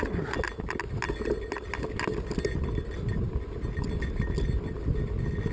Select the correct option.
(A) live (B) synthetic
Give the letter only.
A